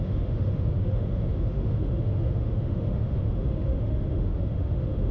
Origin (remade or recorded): remade